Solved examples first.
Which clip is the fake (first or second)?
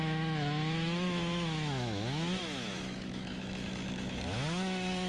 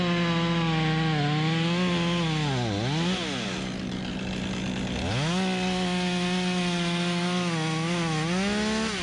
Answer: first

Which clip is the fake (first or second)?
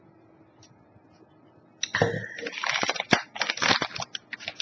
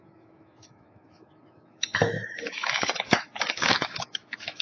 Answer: second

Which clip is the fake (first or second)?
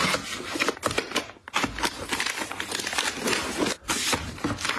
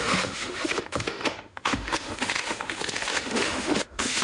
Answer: second